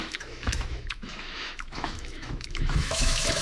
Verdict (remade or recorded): remade